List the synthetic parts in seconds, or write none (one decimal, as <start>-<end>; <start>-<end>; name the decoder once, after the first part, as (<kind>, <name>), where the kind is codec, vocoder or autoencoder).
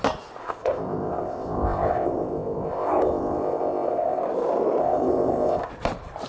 0.4-4.2 (codec, ZipCodec); 4.8-5.7